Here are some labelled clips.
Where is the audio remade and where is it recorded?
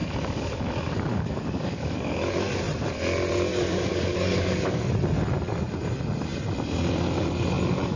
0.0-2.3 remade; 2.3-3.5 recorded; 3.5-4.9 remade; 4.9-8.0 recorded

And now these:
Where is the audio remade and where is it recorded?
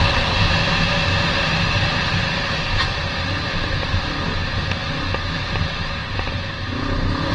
0.0-6.0 recorded; 6.0-6.7 remade; 6.7-7.3 recorded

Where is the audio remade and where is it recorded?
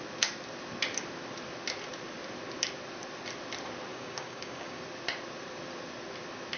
0.0-3.9 recorded; 3.9-4.8 remade; 4.8-6.6 recorded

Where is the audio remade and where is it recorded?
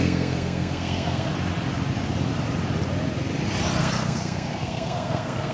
0.0-1.3 remade; 1.3-3.8 recorded; 3.8-5.5 remade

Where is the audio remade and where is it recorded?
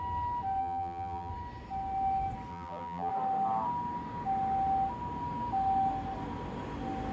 0.0-0.6 recorded; 0.6-1.3 remade; 1.3-2.5 recorded; 2.5-3.1 remade; 3.1-7.1 recorded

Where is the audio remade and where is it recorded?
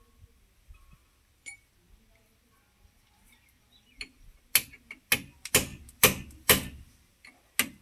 0.0-7.8 recorded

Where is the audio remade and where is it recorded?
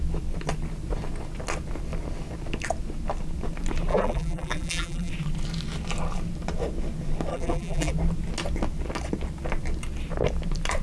0.0-3.9 recorded; 3.9-5.1 remade; 5.1-7.3 recorded; 7.3-7.9 remade; 7.9-10.8 recorded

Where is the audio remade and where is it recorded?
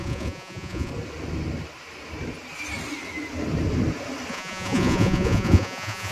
0.0-0.9 remade; 0.9-4.3 recorded; 4.3-6.1 remade